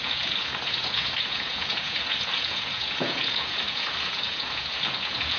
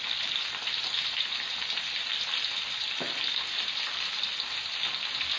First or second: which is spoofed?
first